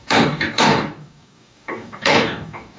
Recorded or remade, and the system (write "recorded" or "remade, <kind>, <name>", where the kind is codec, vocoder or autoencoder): remade, codec, DAC